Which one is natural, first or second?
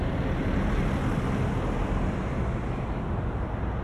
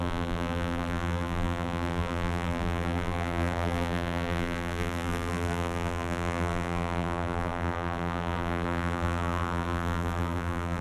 first